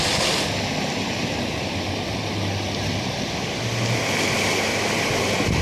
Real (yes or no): yes